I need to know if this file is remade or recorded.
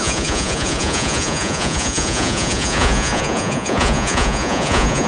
remade